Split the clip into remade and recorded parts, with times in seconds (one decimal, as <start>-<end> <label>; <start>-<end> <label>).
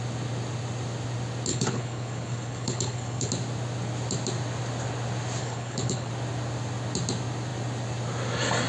0.0-1.5 recorded; 1.5-3.3 remade; 3.3-5.4 recorded; 5.4-6.1 remade; 6.1-8.7 recorded